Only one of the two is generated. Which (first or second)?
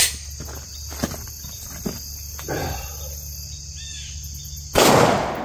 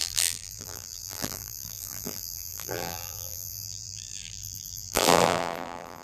second